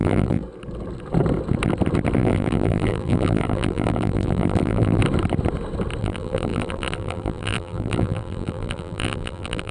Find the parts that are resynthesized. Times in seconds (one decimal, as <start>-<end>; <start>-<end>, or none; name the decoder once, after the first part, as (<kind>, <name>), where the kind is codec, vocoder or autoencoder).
0.0-0.4 (vocoder, BigVGAN v2); 2.2-5.0; 6.0-9.7